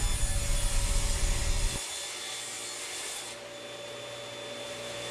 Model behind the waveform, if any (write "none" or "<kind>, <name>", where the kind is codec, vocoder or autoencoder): none